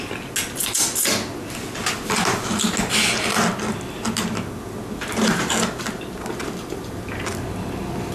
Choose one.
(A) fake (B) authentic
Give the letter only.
B